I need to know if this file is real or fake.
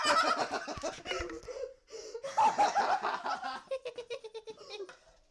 real